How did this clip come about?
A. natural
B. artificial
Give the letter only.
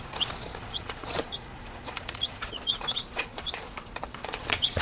B